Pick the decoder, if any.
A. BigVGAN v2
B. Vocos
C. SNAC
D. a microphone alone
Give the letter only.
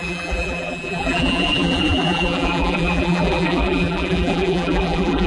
A